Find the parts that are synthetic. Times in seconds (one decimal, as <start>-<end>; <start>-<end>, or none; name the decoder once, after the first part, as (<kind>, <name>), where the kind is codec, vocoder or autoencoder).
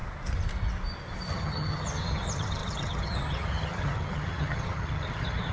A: 1.3-5.5 (vocoder, HiFi-GAN)